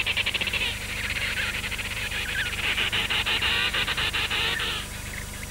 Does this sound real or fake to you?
fake